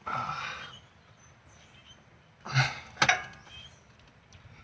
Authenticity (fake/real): real